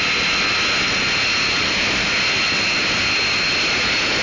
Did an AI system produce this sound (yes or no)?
no